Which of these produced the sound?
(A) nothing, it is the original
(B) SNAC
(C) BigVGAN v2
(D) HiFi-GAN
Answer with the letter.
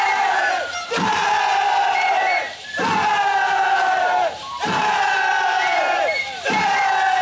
C